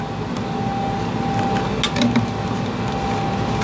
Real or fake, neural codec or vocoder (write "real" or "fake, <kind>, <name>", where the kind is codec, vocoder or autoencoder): real